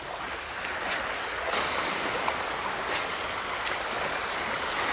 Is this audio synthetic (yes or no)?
no